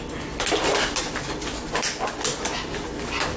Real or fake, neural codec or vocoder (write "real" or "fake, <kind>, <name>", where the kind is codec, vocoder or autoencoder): real